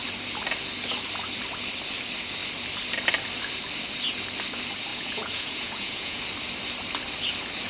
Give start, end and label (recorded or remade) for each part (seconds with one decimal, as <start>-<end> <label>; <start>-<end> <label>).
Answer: 0.0-4.9 recorded; 4.9-6.2 remade; 6.2-7.7 recorded